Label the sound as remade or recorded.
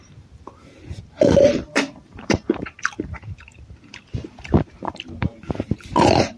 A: remade